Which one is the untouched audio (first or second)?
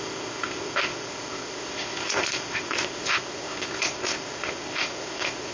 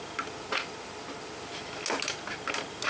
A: second